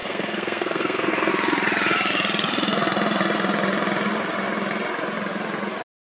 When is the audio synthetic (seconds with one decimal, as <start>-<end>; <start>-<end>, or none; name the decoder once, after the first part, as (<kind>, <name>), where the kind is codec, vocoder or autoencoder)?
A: 0.0-1.3 (codec, SNAC)

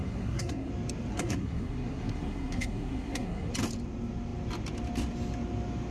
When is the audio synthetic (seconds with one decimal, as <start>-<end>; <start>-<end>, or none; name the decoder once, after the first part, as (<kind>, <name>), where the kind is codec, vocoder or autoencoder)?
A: 0.0-0.7 (codec, SNAC); 1.1-3.5

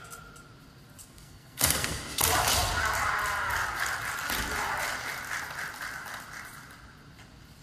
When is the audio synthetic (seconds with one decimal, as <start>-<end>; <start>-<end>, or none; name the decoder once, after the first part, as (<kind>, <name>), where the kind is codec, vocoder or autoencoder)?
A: 1.0-2.2 (codec, SNAC)